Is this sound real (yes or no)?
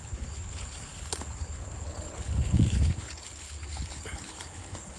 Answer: no